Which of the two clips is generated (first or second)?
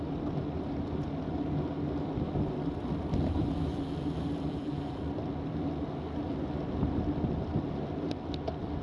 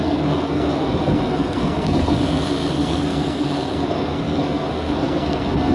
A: second